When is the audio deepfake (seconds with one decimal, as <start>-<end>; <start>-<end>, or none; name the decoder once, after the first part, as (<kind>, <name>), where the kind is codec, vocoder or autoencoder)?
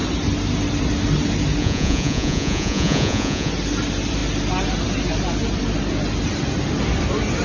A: 1.6-3.5 (vocoder, Vocos)